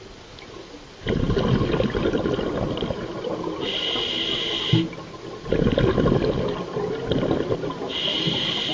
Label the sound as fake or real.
real